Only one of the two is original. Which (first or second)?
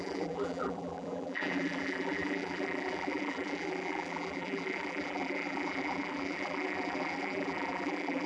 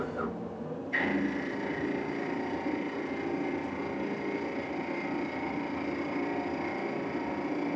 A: second